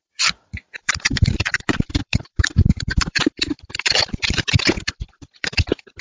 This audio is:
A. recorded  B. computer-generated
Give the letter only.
B